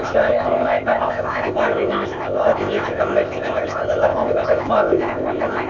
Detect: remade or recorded remade